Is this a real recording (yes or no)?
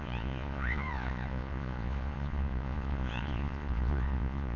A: no